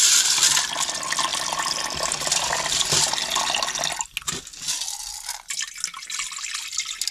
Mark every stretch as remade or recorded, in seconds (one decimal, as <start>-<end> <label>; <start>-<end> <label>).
0.0-7.1 recorded